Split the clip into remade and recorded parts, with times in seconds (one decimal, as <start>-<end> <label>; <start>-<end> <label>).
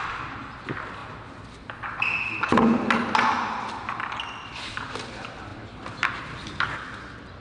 0.0-5.5 recorded; 5.5-6.2 remade; 6.2-7.4 recorded